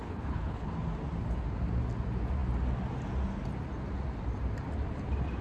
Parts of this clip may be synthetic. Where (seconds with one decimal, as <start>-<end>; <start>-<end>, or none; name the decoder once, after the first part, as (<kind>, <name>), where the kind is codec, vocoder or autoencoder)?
0.0-0.7 (codec, HILCodec)